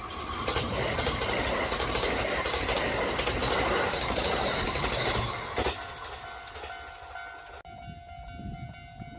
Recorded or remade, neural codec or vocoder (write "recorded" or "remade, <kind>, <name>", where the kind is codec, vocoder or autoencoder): recorded